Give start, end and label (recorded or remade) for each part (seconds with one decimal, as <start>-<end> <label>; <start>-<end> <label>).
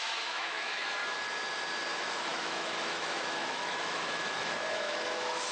0.0-1.0 remade; 1.0-1.9 recorded; 1.9-5.5 remade